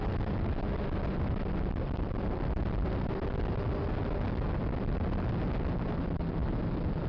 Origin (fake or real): real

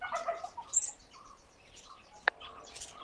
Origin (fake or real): real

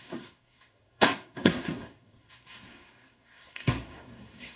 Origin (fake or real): fake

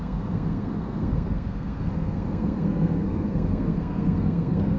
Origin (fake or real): fake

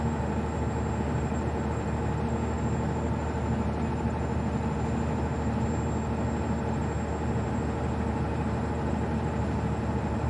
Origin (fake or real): real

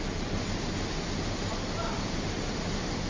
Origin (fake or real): real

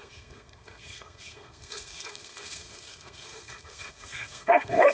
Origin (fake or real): fake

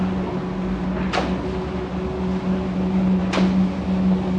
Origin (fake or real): real